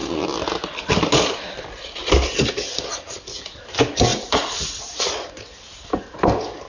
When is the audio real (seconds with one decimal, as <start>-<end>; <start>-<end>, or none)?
0.0-4.1; 4.8-6.7